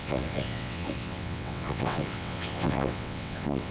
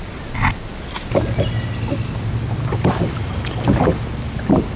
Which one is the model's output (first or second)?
first